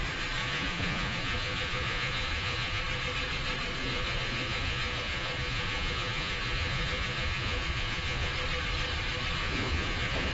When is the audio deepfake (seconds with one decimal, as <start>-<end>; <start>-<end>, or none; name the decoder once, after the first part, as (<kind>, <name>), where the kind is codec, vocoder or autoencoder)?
0.4-2.8 (vocoder, Vocos); 3.8-8.3; 9.4-10.3